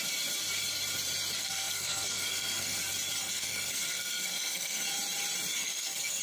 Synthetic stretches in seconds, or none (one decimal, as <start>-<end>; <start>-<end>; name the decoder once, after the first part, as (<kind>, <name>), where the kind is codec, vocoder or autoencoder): 1.4-2.8 (codec, SNAC); 3.2-4.8; 5.6-6.2